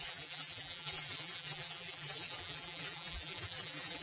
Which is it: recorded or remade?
remade